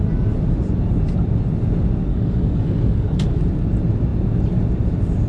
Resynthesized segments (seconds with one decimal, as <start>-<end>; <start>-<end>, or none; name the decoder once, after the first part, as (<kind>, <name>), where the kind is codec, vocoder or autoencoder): 2.1-3.4 (codec, DAC)

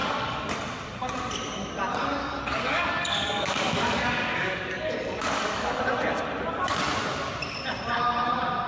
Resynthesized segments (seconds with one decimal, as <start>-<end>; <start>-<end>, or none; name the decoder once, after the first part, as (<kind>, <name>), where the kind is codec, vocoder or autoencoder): 0.0-0.5 (codec, DAC); 2.2-5.8

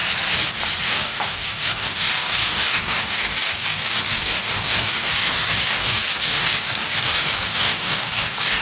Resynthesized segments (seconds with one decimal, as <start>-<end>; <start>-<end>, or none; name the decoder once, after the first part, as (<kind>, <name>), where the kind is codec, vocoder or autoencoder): 0.8-8.6 (codec, DAC)

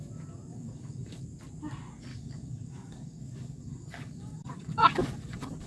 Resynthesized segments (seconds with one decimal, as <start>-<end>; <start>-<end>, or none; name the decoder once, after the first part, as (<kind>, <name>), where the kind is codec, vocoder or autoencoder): 0.5-1.2 (codec, DAC); 2.1-5.7

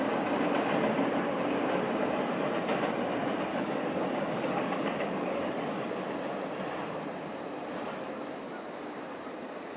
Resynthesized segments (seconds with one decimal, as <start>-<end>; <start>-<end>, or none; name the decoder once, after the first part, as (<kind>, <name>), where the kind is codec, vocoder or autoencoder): 3.5-5.9 (codec, DAC)

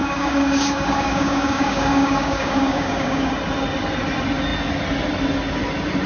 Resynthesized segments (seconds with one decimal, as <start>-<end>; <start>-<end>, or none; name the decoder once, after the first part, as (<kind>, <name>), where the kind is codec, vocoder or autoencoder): 0.0-3.3 (codec, DAC)